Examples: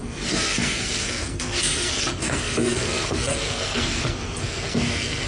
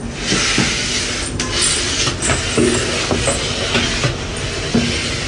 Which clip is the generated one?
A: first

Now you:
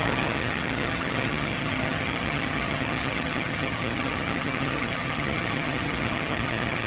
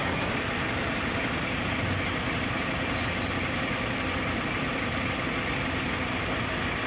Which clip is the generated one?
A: first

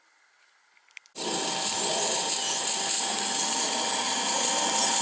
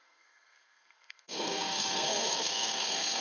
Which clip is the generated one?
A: second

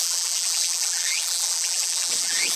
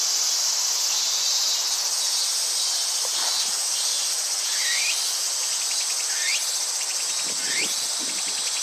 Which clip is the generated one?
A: first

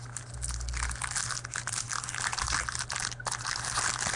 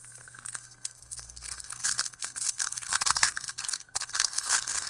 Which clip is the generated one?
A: second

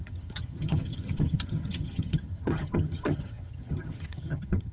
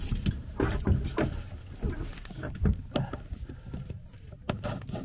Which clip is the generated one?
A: first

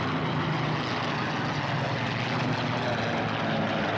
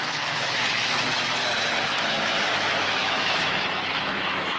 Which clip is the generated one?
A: second